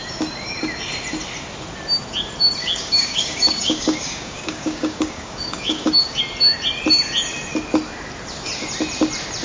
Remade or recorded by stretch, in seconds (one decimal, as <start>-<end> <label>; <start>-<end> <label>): 0.0-2.6 recorded; 2.6-6.2 remade; 6.2-9.4 recorded